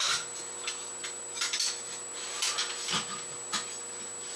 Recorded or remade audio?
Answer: recorded